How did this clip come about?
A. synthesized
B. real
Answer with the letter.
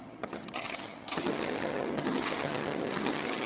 A